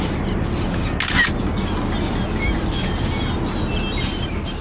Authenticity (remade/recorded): recorded